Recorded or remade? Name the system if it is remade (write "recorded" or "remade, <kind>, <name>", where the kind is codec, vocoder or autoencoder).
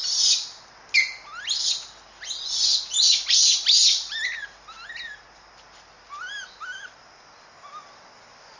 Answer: recorded